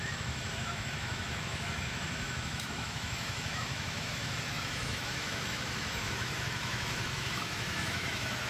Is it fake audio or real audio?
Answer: fake